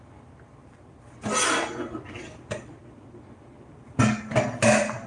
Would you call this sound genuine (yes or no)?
yes